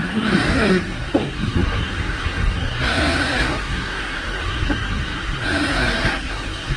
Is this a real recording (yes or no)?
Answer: no